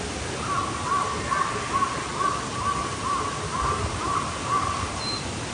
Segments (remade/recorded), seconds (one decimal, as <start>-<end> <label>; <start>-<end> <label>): 0.0-5.5 recorded